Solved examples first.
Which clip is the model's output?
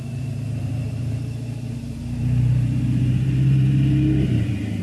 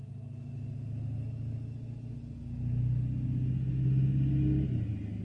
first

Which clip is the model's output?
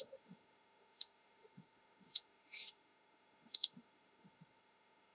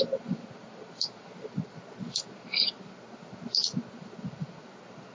first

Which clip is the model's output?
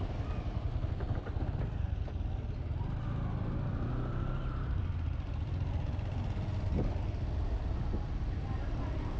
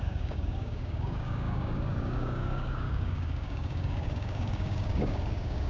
second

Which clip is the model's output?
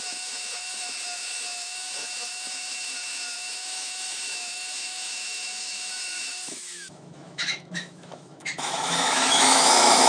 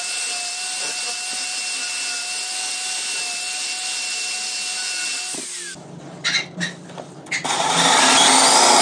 first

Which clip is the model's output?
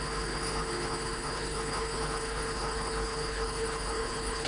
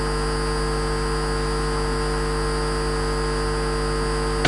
first